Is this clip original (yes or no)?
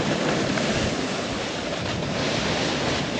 yes